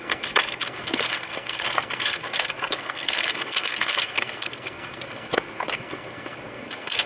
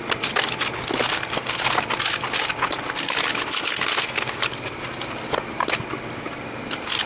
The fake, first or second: first